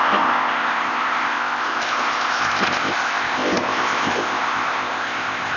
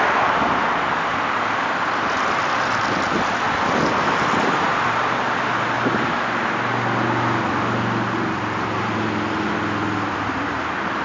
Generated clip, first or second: first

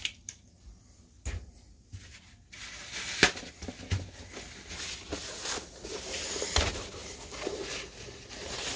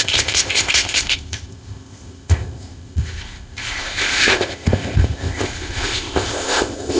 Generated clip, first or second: second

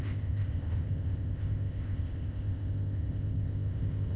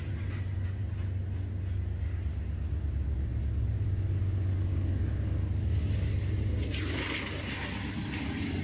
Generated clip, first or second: first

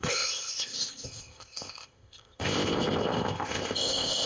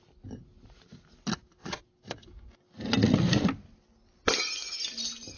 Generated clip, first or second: first